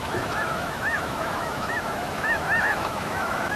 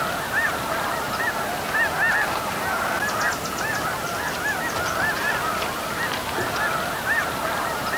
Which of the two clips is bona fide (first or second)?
second